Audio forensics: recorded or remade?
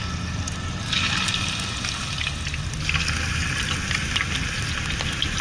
recorded